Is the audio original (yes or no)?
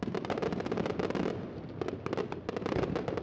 yes